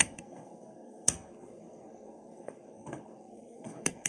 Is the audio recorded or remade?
remade